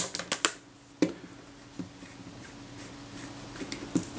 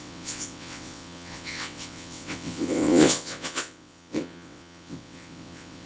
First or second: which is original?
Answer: first